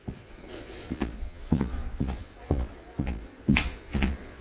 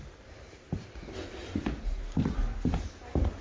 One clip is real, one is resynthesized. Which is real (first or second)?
second